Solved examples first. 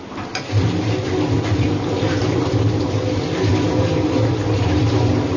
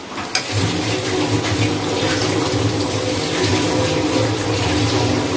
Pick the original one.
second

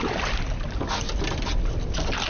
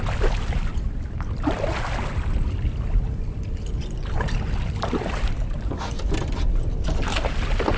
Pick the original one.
first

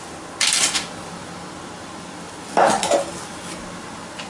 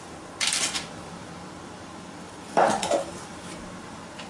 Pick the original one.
first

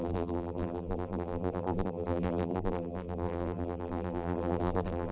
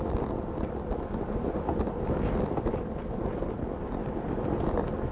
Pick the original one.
second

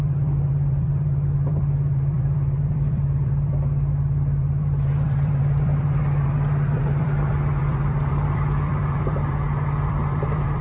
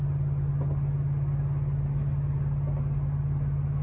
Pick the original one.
second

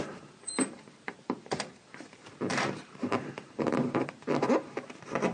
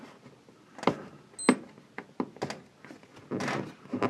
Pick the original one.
second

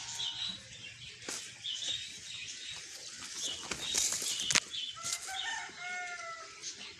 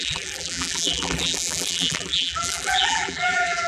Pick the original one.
first